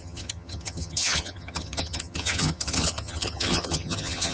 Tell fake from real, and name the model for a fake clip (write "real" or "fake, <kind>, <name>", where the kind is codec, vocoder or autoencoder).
fake, vocoder, HiFi-GAN